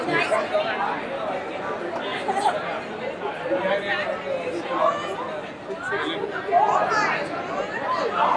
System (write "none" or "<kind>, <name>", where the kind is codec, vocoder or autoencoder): none